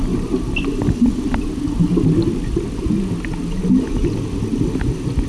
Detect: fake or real real